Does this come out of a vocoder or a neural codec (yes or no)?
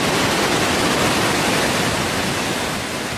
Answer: no